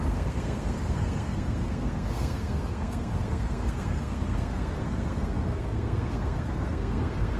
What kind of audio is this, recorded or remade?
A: remade